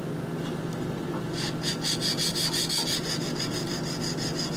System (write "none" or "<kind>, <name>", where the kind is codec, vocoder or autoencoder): none